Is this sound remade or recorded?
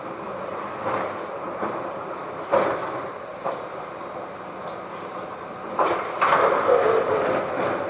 recorded